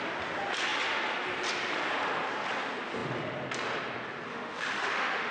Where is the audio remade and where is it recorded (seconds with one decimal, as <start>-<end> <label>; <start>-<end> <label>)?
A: 0.0-4.3 recorded; 4.3-5.3 remade